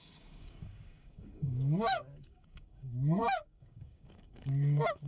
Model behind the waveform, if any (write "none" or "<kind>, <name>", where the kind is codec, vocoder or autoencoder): codec, DAC